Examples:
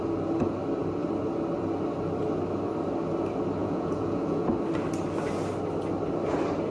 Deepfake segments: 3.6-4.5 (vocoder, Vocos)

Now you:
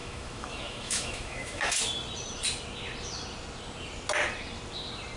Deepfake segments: 0.0-1.8 (autoencoder, DAC-VAE)